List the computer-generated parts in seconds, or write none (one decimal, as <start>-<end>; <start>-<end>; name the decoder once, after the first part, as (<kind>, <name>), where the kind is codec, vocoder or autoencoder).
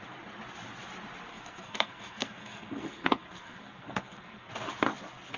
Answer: 1.3-4.5 (codec, SNAC)